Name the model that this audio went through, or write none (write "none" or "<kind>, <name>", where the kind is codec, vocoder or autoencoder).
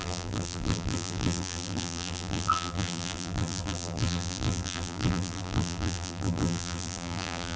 vocoder, BigVGAN v2